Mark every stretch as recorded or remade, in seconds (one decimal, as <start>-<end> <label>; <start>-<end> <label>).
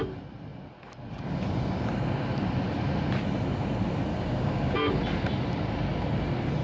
0.0-4.1 recorded; 4.1-5.0 remade; 5.0-6.6 recorded